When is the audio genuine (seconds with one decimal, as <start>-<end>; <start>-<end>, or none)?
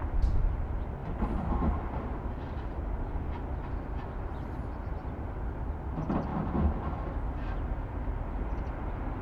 0.0-9.2